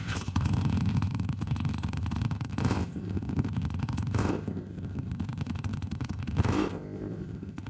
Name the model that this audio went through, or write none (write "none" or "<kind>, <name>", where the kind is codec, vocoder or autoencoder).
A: codec, ZipCodec